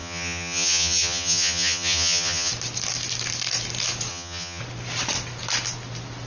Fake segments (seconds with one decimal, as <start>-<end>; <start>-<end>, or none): 0.0-2.5; 4.1-4.6